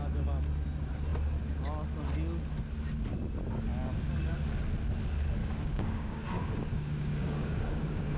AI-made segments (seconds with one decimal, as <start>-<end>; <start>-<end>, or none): 5.4-8.2